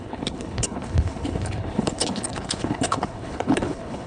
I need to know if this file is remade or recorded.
remade